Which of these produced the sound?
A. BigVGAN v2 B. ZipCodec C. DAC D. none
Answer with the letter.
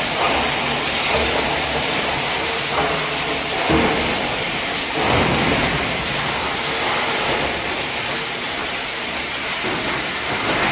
D